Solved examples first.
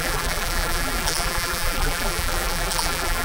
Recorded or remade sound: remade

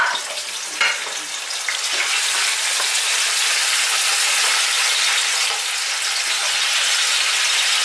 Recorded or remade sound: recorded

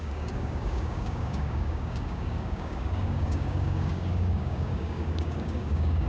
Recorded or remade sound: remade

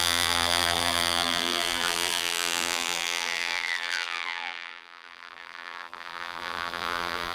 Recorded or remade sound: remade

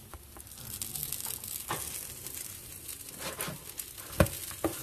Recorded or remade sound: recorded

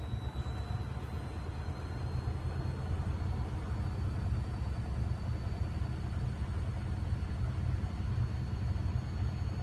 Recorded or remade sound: recorded